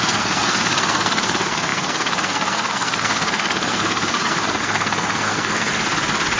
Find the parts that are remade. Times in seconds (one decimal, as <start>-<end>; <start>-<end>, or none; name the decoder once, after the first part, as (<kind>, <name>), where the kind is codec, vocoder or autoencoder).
0.0-5.7 (codec, SNAC)